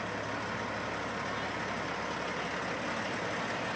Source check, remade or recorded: recorded